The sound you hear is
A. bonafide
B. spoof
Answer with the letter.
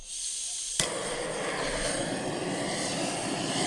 A